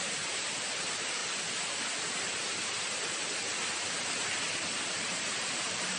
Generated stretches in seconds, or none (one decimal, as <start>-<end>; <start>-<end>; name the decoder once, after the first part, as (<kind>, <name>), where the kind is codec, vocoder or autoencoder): 0.0-1.2 (vocoder, BigVGAN v2); 4.8-6.0